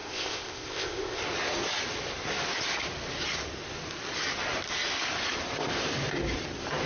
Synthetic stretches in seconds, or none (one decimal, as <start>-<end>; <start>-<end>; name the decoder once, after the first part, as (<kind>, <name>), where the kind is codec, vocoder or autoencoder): 0.0-1.2 (codec, ZipCodec)